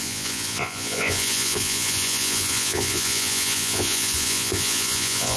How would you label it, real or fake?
fake